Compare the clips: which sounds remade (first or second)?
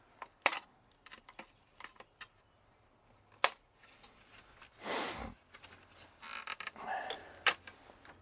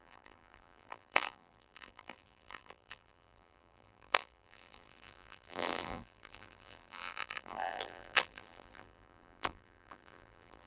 second